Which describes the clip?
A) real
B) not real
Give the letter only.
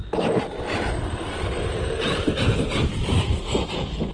B